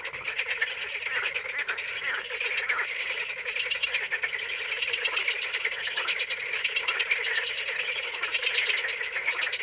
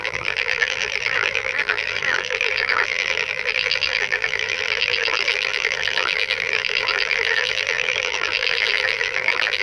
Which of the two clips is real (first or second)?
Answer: first